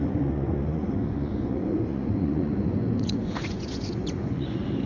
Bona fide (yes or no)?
no